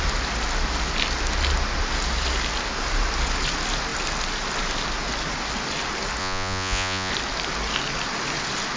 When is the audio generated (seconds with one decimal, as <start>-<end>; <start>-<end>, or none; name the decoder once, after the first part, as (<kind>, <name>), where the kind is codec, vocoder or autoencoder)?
6.2-7.1 (vocoder, Vocos)